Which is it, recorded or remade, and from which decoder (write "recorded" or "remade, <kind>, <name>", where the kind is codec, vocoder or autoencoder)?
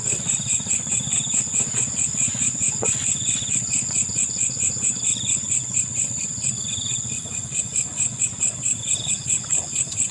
remade, vocoder, Vocos